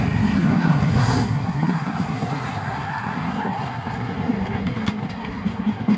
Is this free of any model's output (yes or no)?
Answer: no